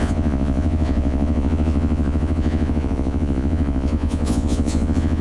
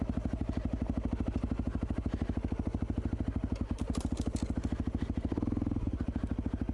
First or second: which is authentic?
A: second